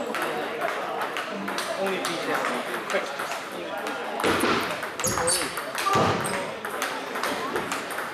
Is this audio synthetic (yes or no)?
no